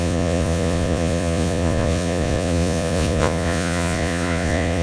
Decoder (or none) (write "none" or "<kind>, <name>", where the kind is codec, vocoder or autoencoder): vocoder, Vocos